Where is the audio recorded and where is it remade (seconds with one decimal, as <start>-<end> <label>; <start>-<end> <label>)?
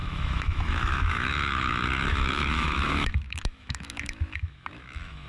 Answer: 0.0-5.3 remade